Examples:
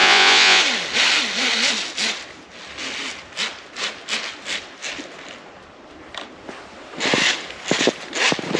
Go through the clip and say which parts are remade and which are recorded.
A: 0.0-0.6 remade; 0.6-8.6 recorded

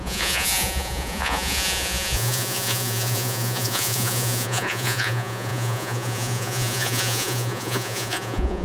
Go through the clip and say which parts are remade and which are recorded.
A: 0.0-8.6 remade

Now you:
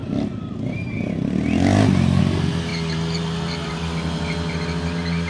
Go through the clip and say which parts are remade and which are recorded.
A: 0.0-5.3 recorded

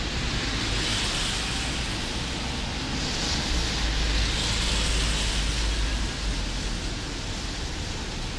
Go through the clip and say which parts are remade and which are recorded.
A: 0.0-8.4 recorded

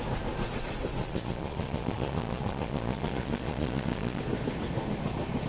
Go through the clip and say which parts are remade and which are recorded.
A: 0.0-1.0 recorded; 1.0-4.2 remade; 4.2-5.5 recorded

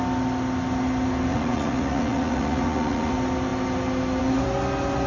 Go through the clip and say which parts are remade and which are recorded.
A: 0.0-1.3 recorded; 1.3-3.1 remade; 3.1-5.1 recorded

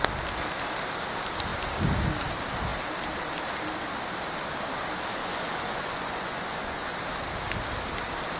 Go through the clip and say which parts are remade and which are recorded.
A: 0.0-5.2 recorded; 5.2-6.9 remade; 6.9-8.4 recorded